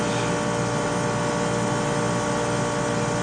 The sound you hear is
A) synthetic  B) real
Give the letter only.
B